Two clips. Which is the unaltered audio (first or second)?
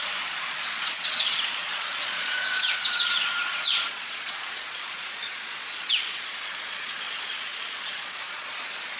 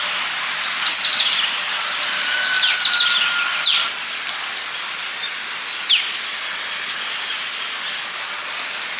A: second